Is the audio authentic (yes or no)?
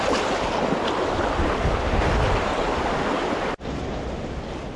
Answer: yes